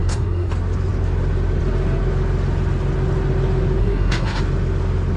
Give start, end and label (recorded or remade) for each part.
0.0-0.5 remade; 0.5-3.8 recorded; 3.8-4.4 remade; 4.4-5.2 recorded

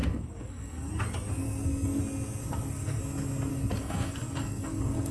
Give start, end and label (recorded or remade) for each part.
0.0-0.9 remade; 0.9-1.4 recorded; 1.4-2.0 remade; 2.0-2.4 recorded; 2.4-3.0 remade; 3.0-3.5 recorded; 3.5-5.1 remade